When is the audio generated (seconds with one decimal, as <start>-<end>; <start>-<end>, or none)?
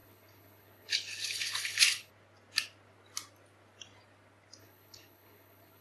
0.0-2.1; 4.6-5.8